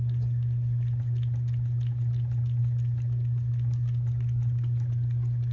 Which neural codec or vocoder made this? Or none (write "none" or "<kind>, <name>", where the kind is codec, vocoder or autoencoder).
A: none